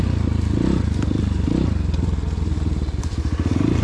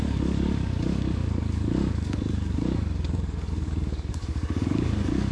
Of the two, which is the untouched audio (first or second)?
first